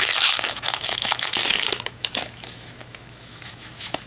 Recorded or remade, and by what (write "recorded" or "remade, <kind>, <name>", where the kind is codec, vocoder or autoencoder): remade, autoencoder, DAC-VAE